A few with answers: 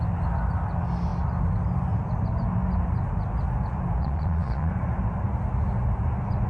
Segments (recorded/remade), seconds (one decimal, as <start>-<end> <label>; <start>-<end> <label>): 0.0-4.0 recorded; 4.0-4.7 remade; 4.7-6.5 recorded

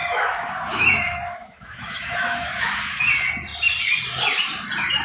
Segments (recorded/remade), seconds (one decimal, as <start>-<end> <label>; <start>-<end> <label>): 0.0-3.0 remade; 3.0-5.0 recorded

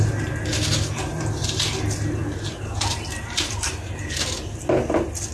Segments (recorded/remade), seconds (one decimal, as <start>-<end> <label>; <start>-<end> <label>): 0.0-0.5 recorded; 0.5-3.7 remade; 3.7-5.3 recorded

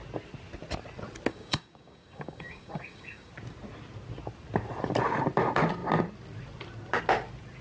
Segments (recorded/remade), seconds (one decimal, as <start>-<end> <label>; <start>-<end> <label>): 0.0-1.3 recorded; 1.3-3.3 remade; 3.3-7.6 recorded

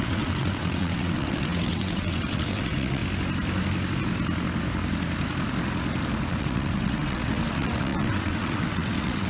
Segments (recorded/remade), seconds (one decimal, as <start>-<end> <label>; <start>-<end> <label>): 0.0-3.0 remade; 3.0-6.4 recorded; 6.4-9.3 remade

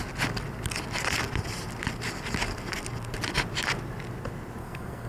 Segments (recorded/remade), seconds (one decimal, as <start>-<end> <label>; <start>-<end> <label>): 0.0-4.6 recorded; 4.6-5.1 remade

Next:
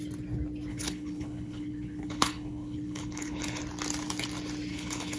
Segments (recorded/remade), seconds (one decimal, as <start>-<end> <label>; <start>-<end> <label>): 0.0-0.7 recorded; 0.7-3.6 remade; 3.6-4.7 recorded; 4.7-5.2 remade

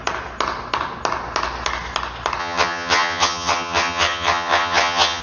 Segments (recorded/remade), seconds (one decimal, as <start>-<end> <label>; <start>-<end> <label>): 0.0-2.4 recorded; 2.4-5.2 remade